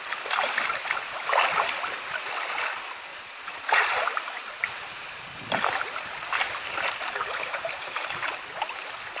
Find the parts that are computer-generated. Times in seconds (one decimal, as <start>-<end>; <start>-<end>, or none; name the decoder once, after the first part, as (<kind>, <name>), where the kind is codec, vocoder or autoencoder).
3.1-4.0 (vocoder, Vocos)